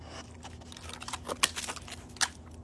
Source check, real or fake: real